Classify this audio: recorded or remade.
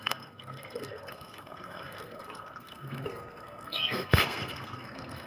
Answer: remade